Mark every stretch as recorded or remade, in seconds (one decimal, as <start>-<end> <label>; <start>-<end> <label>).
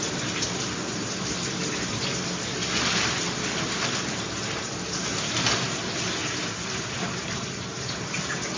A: 0.0-5.1 recorded; 5.1-5.8 remade; 5.8-6.2 recorded; 6.2-7.8 remade; 7.8-8.6 recorded